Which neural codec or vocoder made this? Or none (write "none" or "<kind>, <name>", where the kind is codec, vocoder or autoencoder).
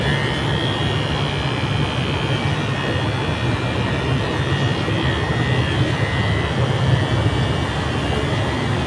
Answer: none